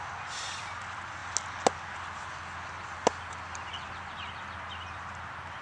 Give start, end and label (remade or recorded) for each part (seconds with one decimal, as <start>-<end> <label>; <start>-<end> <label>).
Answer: 0.0-5.6 recorded